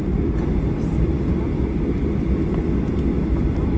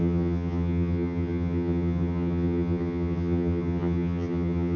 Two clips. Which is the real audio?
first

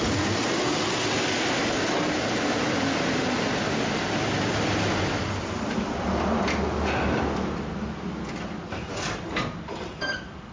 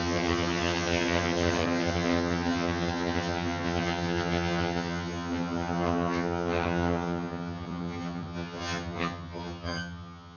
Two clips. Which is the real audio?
first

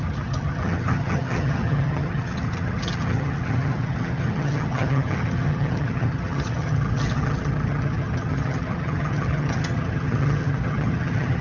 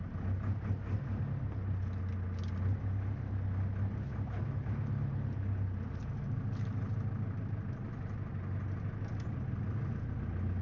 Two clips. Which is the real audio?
second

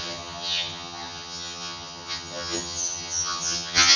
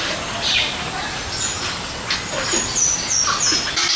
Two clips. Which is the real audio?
second